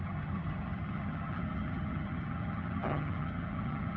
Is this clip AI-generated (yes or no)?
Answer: yes